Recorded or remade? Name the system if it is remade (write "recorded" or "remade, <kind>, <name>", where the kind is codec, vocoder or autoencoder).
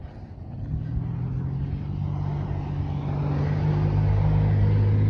recorded